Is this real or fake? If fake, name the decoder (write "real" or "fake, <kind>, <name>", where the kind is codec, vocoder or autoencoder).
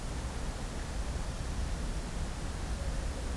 real